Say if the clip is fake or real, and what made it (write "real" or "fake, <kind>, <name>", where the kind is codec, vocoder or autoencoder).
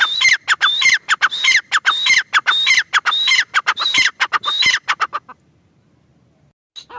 real